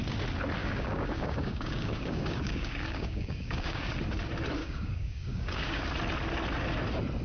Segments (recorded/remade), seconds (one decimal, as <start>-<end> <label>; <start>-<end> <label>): 0.0-0.6 recorded; 0.6-3.9 remade; 3.9-4.6 recorded; 4.6-5.8 remade; 5.8-7.2 recorded